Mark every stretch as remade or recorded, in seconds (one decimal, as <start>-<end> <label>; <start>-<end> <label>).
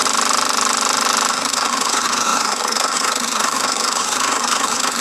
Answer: 0.0-1.3 recorded; 1.3-5.0 remade